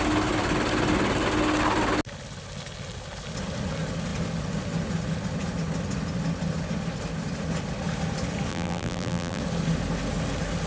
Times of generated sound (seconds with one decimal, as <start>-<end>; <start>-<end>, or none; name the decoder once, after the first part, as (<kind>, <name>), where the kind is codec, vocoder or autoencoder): 8.5-9.4 (vocoder, BigVGAN v2)